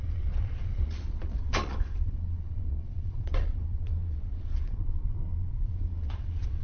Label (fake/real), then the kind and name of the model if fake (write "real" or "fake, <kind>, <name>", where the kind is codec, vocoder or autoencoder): fake, vocoder, Vocos